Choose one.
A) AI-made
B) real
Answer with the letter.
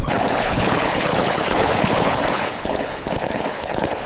A